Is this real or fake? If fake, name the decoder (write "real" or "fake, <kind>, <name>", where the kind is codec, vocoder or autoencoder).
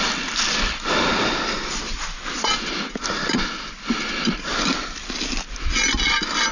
real